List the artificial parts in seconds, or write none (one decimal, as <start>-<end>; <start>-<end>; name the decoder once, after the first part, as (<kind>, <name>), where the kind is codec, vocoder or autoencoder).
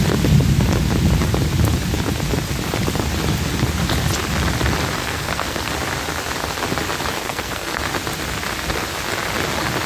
5.0-5.7 (codec, SNAC); 7.2-7.8